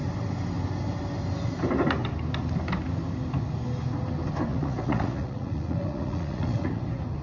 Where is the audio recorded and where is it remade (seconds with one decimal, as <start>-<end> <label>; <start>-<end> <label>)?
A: 0.0-4.5 recorded; 4.5-6.8 remade; 6.8-7.2 recorded